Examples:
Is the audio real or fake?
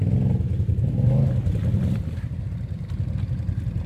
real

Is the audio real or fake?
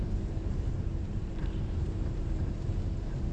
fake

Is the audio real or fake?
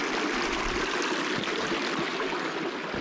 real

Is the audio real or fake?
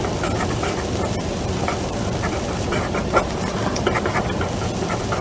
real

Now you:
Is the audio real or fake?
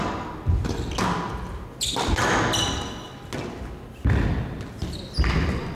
real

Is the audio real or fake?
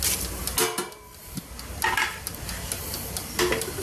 real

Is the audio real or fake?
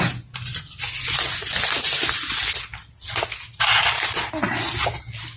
real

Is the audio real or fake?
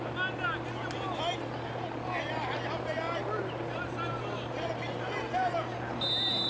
real